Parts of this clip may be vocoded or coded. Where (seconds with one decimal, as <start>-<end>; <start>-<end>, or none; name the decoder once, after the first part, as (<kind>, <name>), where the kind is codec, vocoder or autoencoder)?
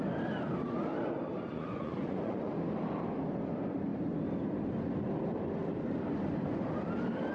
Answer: 1.5-2.5 (vocoder, Vocos)